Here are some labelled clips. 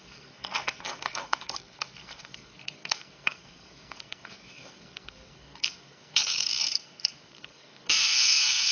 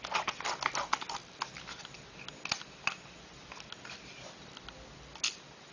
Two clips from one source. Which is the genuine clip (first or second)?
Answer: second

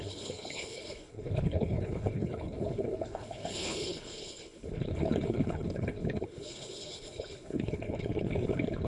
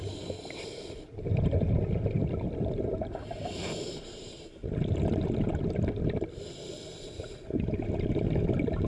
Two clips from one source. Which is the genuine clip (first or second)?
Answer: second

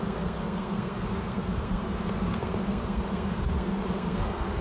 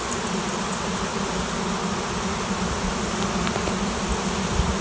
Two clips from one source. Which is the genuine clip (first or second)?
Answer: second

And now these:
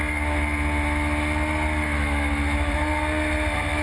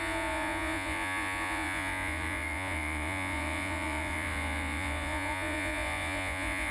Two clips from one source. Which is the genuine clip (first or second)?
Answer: first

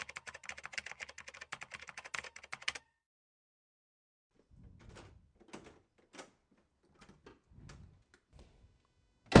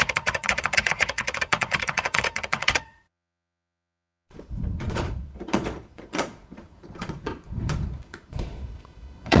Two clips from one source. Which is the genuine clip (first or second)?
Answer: first